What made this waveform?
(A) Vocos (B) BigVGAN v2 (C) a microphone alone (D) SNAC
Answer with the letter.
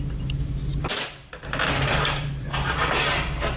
B